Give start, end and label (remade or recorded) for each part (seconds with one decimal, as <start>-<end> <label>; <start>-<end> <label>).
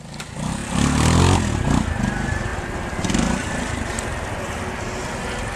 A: 0.0-0.6 recorded; 0.6-1.2 remade; 1.2-2.5 recorded; 2.5-4.8 remade; 4.8-5.6 recorded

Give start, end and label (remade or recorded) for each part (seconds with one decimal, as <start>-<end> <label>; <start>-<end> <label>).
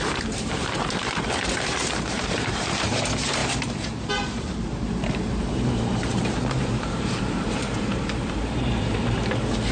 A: 0.0-9.7 remade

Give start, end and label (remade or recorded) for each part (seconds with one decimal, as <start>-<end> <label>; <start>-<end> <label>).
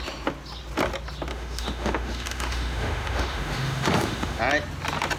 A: 0.0-1.3 recorded; 1.3-4.4 remade; 4.4-5.2 recorded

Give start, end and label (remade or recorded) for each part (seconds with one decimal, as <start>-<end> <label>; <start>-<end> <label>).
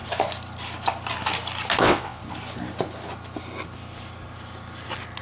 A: 0.0-1.8 recorded; 1.8-2.2 remade; 2.2-5.2 recorded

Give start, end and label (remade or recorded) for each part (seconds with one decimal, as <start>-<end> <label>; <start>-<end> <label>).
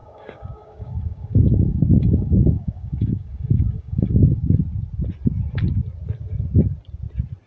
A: 0.0-4.4 remade; 4.4-7.5 recorded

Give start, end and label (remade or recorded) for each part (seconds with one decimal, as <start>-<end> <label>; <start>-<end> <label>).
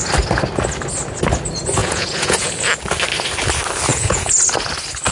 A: 0.0-1.8 recorded; 1.8-2.6 remade; 2.6-3.9 recorded; 3.9-4.4 remade; 4.4-5.1 recorded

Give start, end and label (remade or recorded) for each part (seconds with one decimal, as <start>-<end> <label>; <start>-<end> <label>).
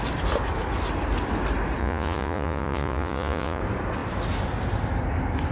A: 0.0-1.8 recorded; 1.8-3.6 remade; 3.6-5.5 recorded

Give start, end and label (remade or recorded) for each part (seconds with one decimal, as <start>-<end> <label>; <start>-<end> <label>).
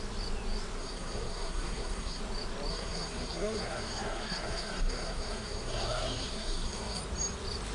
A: 0.0-0.8 recorded; 0.8-2.2 remade; 2.2-2.7 recorded; 2.7-7.0 remade; 7.0-7.7 recorded